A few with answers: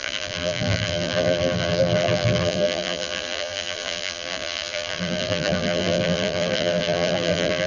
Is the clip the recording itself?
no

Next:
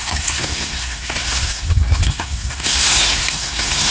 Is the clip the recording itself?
no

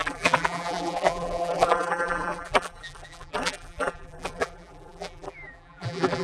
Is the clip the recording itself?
no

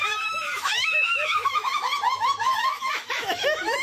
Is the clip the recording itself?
no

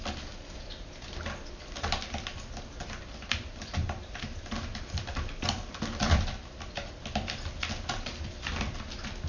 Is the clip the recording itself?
yes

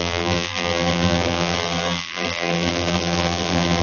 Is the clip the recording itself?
no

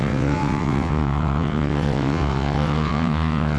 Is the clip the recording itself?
no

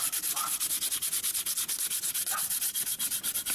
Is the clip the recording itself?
yes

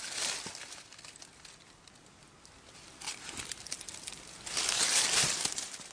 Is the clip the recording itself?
yes